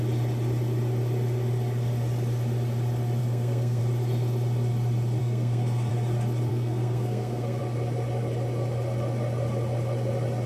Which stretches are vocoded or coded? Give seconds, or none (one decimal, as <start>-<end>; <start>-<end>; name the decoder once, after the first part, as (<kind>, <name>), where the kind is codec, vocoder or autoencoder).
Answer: 3.2-3.8 (codec, SNAC); 5.2-5.9; 6.5-7.6